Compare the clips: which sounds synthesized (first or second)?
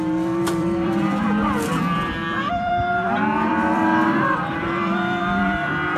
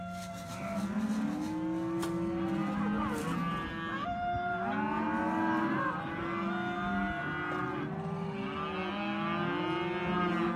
first